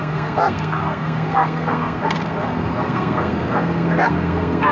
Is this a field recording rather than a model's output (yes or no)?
no